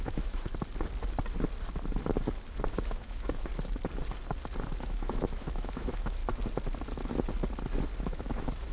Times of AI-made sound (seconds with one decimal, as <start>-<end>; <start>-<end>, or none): 0.0-0.5; 2.9-3.5; 4.7-6.2; 8.0-8.7